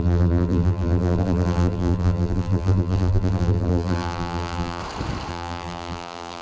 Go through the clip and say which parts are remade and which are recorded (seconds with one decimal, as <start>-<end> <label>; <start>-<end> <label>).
0.0-4.8 remade; 4.8-5.3 recorded; 5.3-6.4 remade